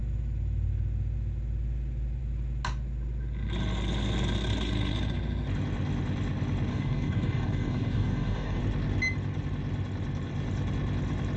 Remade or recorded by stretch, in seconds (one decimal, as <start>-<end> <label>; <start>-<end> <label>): 0.0-6.7 recorded; 6.7-8.6 remade; 8.6-11.4 recorded